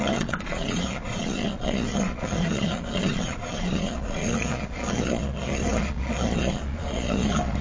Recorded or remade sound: remade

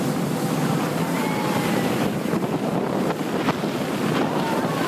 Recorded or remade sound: remade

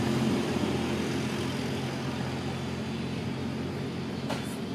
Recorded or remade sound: recorded